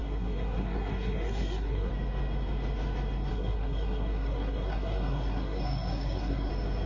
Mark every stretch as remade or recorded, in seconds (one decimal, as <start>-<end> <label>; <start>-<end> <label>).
0.0-1.9 remade; 1.9-3.3 recorded; 3.3-6.5 remade; 6.5-6.9 recorded